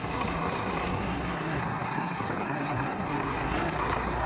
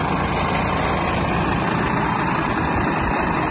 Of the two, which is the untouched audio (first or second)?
second